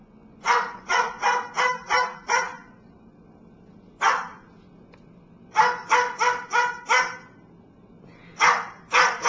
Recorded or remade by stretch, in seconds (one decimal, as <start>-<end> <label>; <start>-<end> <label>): 0.0-1.0 remade; 1.0-9.3 recorded